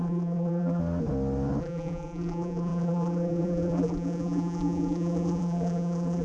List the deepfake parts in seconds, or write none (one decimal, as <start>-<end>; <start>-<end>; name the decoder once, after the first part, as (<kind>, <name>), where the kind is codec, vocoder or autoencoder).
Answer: 0.0-0.8 (vocoder, BigVGAN v2); 1.6-6.2